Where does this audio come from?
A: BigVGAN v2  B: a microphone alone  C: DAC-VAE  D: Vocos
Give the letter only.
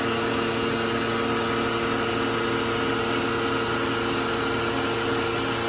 B